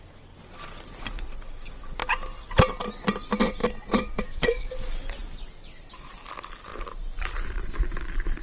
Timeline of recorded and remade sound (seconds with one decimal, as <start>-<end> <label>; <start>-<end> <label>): 0.0-3.6 recorded; 3.6-4.4 remade; 4.4-5.2 recorded; 5.2-6.2 remade; 6.2-6.7 recorded; 6.7-7.9 remade; 7.9-8.4 recorded